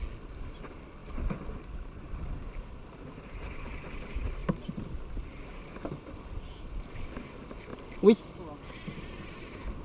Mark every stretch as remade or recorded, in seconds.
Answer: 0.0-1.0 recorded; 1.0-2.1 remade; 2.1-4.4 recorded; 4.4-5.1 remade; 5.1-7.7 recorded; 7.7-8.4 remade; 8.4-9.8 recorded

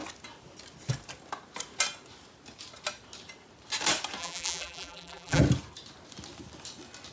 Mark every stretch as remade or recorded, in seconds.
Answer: 0.0-4.2 recorded; 4.2-5.4 remade; 5.4-7.1 recorded

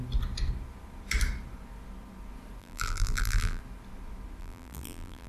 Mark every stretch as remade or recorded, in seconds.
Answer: 0.0-2.6 recorded; 2.6-3.6 remade; 3.6-4.4 recorded; 4.4-5.3 remade

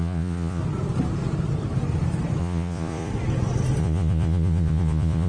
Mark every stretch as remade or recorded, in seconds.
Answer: 0.0-0.6 remade; 0.6-2.4 recorded; 2.4-3.1 remade; 3.1-3.8 recorded; 3.8-5.3 remade

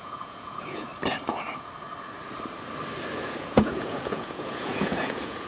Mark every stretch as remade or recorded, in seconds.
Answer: 0.0-0.9 remade; 0.9-3.2 recorded; 3.2-5.5 remade

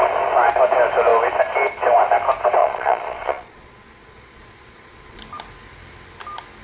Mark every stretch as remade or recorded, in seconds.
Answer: 0.0-2.6 recorded; 2.6-5.2 remade; 5.2-6.6 recorded

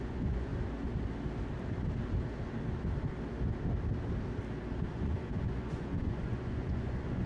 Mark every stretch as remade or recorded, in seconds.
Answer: 0.0-0.5 remade; 0.5-4.9 recorded; 4.9-7.3 remade